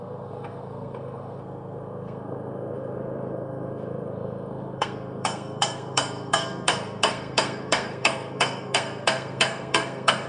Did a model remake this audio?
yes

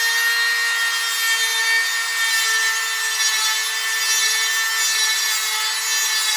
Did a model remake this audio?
no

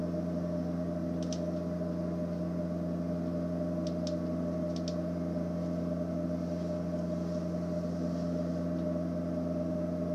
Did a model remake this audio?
no